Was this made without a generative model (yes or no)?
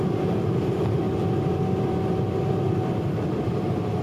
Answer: yes